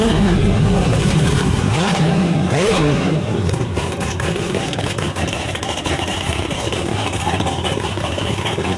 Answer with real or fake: fake